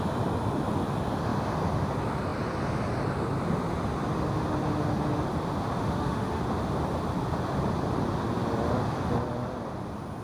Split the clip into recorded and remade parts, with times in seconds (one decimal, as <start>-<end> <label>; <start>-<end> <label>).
0.0-5.8 recorded; 5.8-6.4 remade; 6.4-10.2 recorded